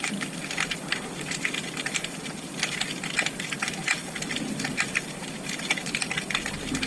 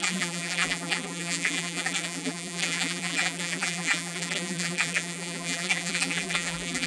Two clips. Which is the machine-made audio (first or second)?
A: second